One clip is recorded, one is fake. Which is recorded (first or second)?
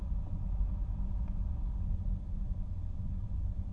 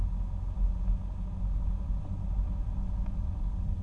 second